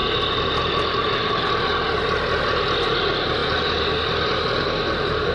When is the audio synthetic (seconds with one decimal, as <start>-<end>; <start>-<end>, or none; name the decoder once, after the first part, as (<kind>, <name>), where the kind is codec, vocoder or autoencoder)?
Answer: none